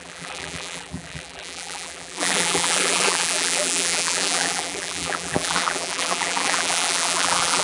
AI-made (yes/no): yes